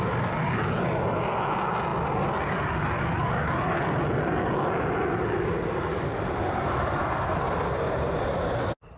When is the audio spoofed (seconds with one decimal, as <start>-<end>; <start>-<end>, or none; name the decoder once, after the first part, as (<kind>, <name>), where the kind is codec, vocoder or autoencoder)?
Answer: none